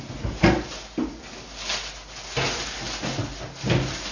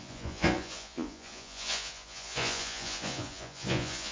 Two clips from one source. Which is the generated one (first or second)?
second